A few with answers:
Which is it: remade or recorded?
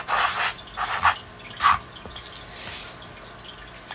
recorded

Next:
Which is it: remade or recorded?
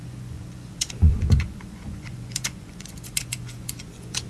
remade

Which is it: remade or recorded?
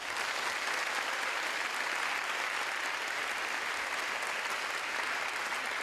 recorded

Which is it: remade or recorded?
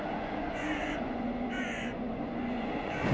remade